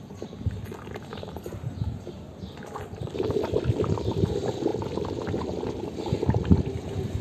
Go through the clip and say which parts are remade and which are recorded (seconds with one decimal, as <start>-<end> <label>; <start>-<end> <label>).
0.0-7.2 recorded